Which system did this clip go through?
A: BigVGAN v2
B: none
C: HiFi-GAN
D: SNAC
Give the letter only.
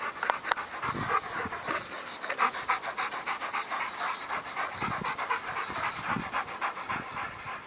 B